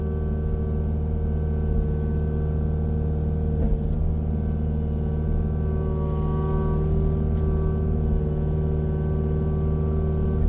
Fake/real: real